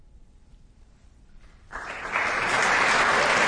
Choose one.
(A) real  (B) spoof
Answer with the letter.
B